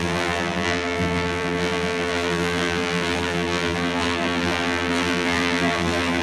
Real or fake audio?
fake